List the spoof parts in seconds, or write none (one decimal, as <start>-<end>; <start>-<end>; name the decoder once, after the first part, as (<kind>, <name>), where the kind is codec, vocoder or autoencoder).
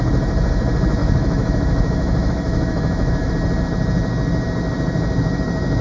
1.0-3.3 (autoencoder, DAC-VAE)